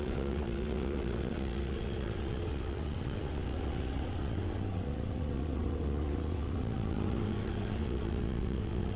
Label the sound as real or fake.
fake